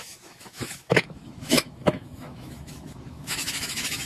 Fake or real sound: fake